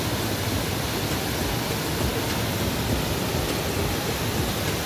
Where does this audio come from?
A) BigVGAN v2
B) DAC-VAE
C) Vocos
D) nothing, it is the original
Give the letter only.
D